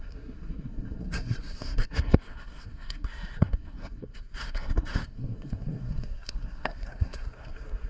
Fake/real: fake